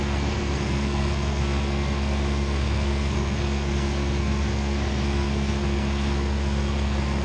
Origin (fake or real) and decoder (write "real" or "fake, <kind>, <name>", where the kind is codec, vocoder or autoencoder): fake, codec, SNAC